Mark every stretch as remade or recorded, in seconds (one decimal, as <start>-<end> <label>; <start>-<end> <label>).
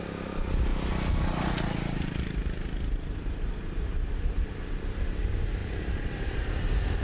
0.0-5.6 recorded; 5.6-6.4 remade; 6.4-7.0 recorded